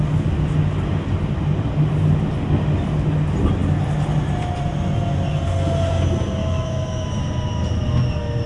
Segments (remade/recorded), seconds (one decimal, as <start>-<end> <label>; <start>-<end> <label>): 0.0-6.4 recorded; 6.4-7.1 remade; 7.1-8.5 recorded